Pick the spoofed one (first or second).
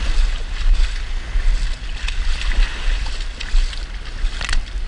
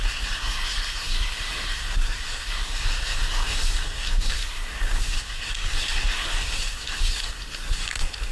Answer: second